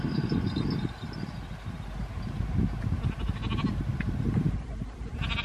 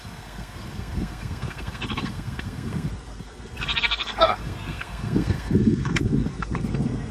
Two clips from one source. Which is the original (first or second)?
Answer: first